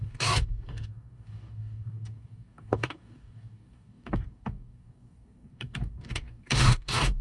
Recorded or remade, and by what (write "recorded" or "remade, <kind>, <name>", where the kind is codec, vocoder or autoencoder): remade, codec, DAC